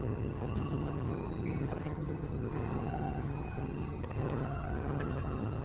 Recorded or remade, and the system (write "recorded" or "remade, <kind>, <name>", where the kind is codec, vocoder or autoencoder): remade, vocoder, HiFi-GAN